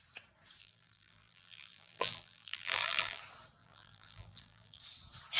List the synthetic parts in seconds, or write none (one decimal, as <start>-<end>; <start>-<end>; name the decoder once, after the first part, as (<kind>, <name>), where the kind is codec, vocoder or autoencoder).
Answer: 0.6-3.2 (vocoder, BigVGAN v2); 3.6-4.8